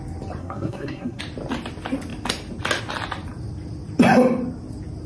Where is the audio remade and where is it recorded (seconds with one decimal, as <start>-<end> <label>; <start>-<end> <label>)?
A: 0.0-0.4 recorded; 0.4-1.2 remade; 1.2-5.1 recorded